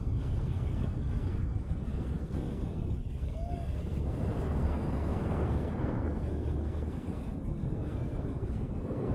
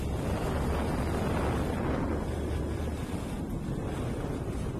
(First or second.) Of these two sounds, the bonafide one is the second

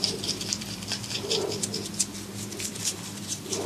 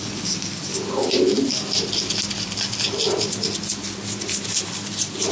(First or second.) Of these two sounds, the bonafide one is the second